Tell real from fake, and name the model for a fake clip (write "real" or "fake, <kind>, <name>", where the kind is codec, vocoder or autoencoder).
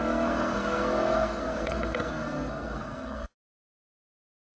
fake, codec, SNAC